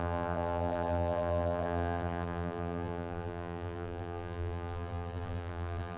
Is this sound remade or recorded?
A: remade